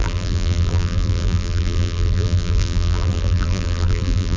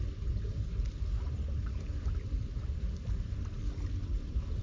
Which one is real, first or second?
second